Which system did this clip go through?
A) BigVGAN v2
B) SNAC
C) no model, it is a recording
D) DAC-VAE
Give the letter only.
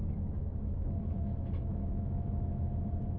D